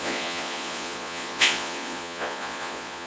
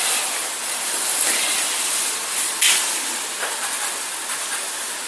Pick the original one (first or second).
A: second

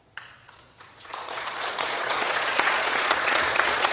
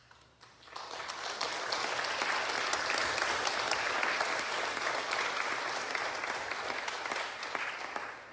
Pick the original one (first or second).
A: second